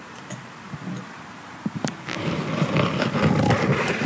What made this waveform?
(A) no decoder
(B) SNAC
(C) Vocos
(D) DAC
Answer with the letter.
A